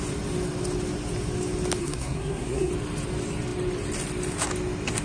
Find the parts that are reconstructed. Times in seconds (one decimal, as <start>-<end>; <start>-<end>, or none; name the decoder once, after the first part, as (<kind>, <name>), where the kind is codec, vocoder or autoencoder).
1.8-2.7 (codec, SNAC)